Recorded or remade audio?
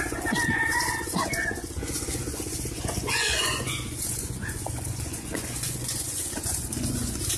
remade